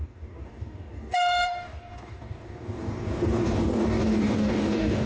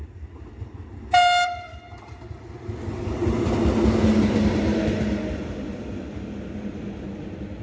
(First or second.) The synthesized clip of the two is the first